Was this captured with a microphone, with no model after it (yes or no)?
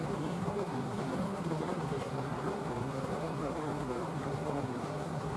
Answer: no